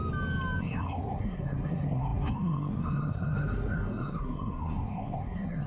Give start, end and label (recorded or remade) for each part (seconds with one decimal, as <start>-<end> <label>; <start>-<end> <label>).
0.0-0.6 recorded; 0.6-5.7 remade